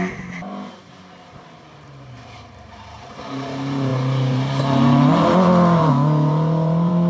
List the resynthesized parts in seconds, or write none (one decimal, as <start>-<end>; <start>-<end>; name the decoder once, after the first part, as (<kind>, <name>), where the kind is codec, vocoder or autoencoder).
0.0-7.1 (vocoder, BigVGAN v2)